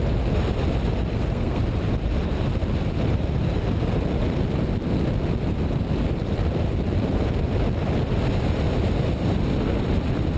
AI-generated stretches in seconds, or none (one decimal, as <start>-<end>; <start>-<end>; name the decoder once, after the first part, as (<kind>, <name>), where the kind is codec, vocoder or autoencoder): 1.1-1.6 (codec, SNAC)